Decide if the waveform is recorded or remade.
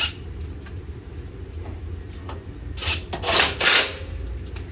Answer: recorded